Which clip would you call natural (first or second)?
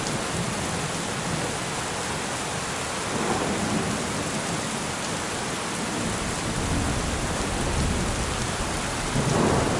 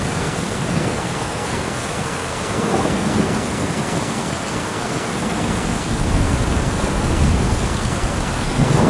first